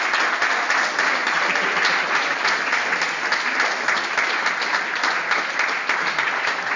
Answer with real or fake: real